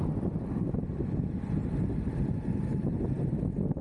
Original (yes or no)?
yes